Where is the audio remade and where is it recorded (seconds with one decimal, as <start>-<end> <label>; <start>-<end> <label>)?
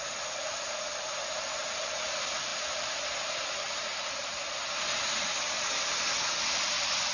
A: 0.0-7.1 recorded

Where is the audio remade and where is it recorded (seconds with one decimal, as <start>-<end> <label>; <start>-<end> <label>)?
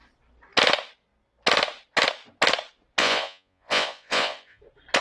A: 0.0-3.0 recorded; 3.0-4.6 remade; 4.6-5.0 recorded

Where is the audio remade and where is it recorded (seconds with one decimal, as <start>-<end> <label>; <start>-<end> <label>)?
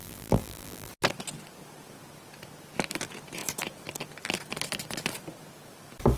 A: 0.0-0.9 remade; 0.9-6.2 recorded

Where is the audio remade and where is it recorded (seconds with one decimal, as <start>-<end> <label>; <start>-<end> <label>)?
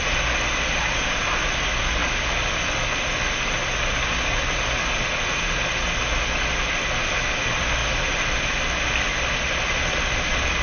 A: 0.0-2.0 recorded; 2.0-3.1 remade; 3.1-3.6 recorded; 3.6-4.5 remade; 4.5-10.6 recorded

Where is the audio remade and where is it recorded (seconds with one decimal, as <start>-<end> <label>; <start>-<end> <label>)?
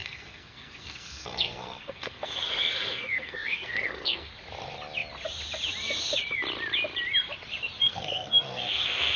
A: 0.0-4.3 remade; 4.3-7.8 recorded; 7.8-9.2 remade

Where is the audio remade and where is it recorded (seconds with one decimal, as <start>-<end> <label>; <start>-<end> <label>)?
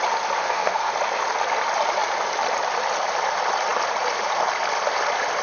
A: 0.0-0.4 recorded; 0.4-0.9 remade; 0.9-5.4 recorded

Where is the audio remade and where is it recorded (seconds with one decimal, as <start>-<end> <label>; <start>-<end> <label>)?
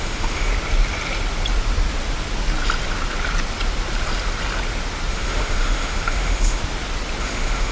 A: 0.0-0.5 remade; 0.5-5.1 recorded; 5.1-6.6 remade; 6.6-7.2 recorded; 7.2-7.7 remade